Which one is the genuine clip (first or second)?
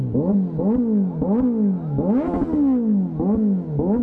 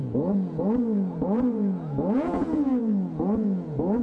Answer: first